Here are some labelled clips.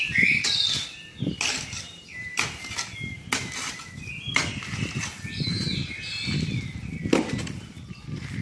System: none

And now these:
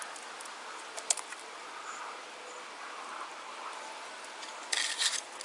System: none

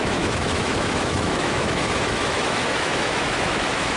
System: autoencoder, DAC-VAE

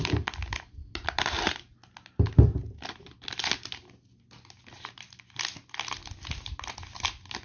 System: none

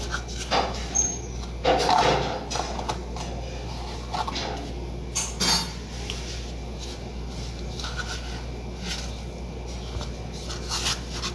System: none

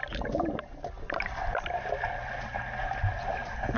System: none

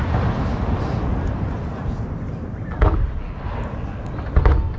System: none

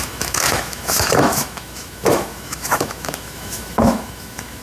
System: autoencoder, DAC-VAE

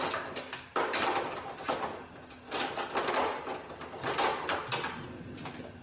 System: none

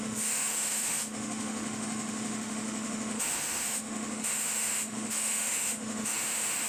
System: autoencoder, DAC-VAE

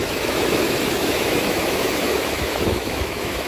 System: autoencoder, DAC-VAE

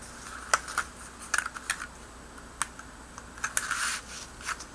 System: none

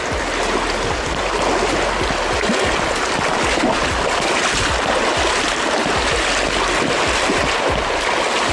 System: none